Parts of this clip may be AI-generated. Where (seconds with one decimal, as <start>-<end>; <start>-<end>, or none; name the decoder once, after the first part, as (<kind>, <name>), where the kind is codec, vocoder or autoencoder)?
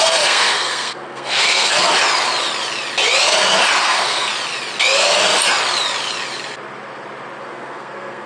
0.0-1.9 (codec, SNAC); 3.8-4.3; 7.4-8.3